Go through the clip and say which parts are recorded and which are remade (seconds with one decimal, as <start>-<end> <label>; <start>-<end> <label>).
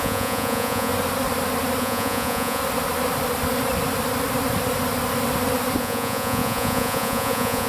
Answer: 0.0-0.9 remade; 0.9-1.8 recorded; 1.8-2.6 remade; 2.6-5.8 recorded; 5.8-7.7 remade